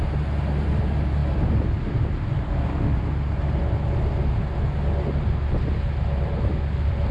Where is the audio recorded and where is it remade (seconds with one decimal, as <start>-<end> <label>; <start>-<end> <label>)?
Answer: 0.0-7.1 recorded